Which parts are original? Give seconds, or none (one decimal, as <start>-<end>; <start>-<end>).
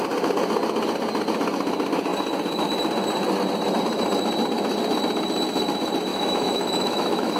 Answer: 0.0-6.1